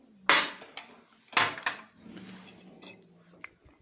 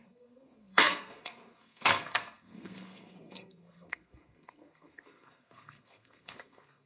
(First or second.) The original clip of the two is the first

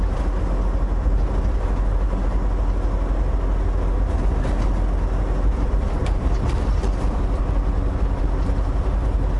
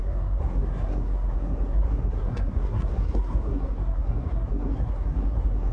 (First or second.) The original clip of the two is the first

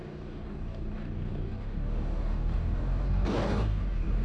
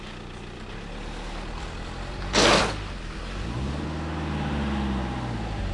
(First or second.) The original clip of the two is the second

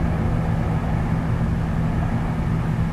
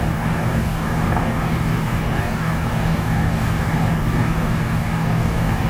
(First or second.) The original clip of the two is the first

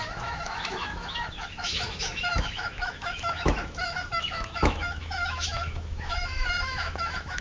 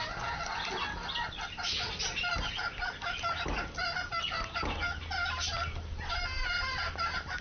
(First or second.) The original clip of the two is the second